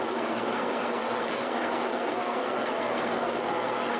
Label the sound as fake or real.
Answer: fake